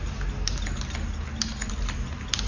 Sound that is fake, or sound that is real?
real